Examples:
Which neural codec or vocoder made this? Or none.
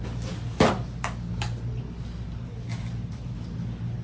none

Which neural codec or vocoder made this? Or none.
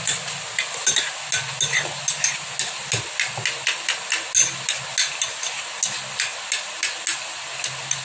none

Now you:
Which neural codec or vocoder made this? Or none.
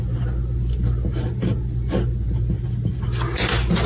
none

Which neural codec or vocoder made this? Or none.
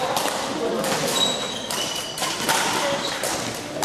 none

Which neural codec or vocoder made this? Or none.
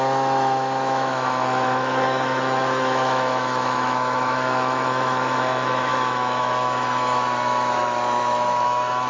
autoencoder, DAC-VAE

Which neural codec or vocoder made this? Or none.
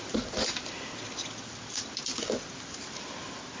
none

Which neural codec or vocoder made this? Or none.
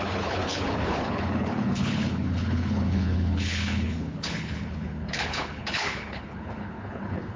codec, HILCodec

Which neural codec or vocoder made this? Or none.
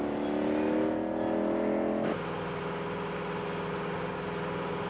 none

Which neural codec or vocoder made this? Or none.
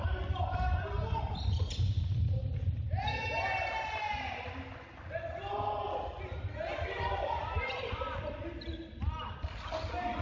none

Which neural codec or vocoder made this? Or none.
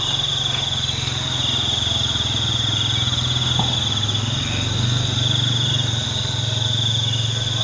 none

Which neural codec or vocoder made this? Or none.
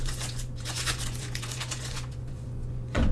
vocoder, Vocos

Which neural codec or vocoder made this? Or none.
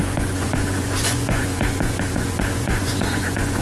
vocoder, Vocos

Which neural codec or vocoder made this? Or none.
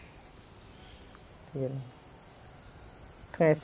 none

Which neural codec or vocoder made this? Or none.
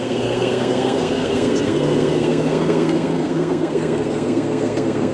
codec, SNAC